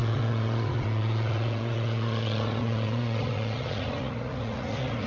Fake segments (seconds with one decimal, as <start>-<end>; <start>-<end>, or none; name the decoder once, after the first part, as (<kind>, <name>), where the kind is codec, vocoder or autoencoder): 0.0-5.1 (vocoder, Vocos)